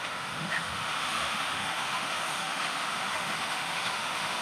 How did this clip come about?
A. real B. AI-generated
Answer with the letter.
B